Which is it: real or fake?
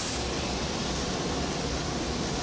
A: fake